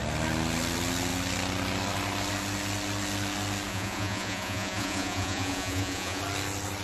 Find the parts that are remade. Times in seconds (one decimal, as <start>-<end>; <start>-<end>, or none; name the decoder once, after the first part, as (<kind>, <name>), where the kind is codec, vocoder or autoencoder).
3.7-6.2 (vocoder, Vocos)